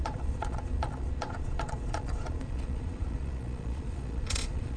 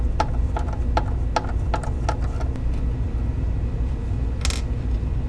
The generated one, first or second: first